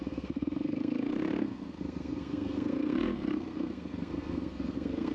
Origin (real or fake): fake